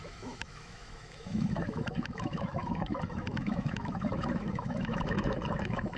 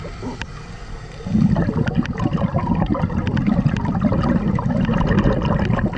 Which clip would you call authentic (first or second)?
second